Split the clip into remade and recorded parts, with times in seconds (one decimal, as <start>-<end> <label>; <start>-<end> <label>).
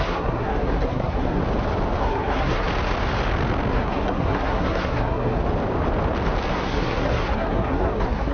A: 0.0-1.4 remade; 1.4-2.0 recorded; 2.0-2.7 remade; 2.7-3.7 recorded; 3.7-5.4 remade; 5.4-6.5 recorded; 6.5-8.3 remade